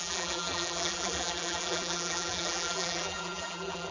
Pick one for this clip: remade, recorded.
remade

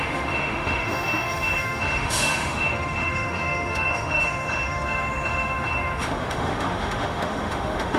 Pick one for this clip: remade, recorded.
remade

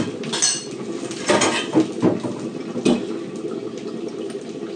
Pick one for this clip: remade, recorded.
recorded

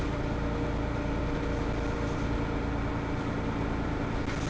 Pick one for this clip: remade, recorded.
recorded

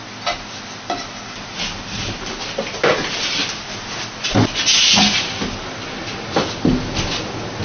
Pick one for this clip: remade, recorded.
recorded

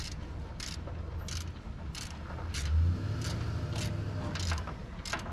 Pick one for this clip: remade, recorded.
recorded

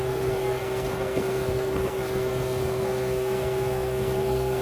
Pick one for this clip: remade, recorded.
remade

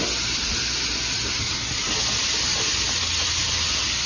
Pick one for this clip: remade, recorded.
recorded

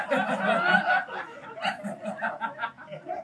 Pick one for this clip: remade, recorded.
recorded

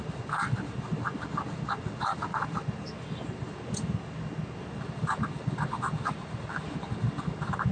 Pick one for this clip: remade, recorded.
recorded